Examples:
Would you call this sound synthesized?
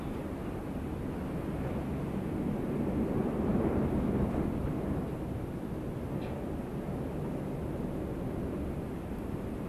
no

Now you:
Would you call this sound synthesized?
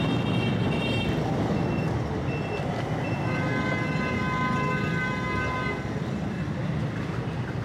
no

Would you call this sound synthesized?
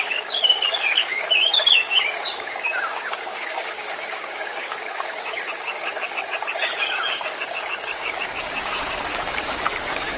yes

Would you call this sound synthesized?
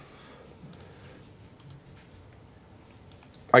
no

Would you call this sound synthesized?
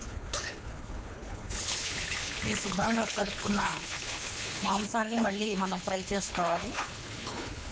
yes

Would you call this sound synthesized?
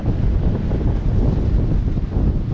no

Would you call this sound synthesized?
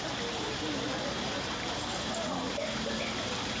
no